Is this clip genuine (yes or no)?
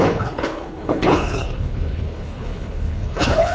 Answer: no